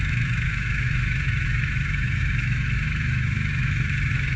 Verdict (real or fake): fake